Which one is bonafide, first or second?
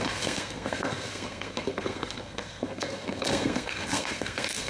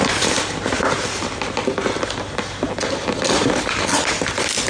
second